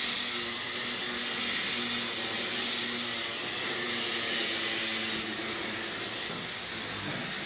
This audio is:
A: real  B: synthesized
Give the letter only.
A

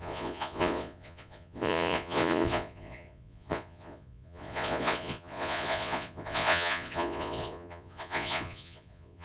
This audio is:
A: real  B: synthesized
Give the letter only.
B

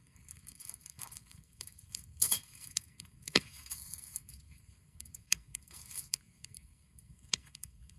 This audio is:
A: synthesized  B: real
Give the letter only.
A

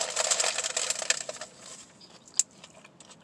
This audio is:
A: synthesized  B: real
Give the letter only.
B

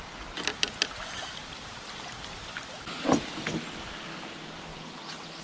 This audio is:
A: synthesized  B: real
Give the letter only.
B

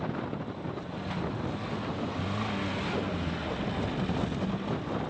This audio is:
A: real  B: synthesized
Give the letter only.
A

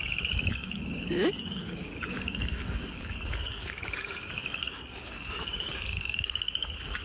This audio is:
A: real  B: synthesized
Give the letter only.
B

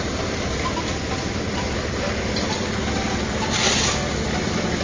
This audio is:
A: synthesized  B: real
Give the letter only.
B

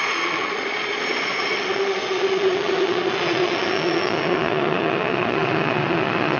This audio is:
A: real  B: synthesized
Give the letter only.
B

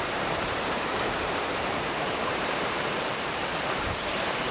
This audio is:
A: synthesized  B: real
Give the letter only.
A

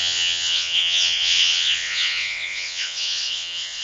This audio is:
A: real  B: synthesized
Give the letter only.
B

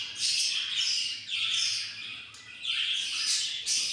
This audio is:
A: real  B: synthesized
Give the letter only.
A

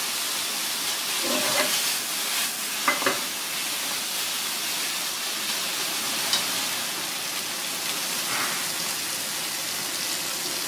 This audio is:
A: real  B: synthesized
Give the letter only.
A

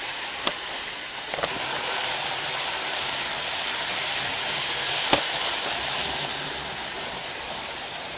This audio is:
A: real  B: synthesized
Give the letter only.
A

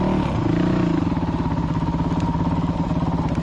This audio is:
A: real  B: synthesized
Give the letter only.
A